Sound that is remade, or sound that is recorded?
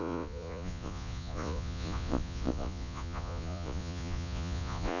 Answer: remade